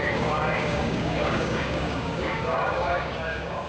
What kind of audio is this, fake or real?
fake